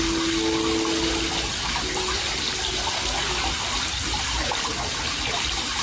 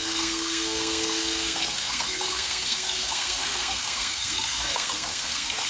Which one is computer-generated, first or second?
second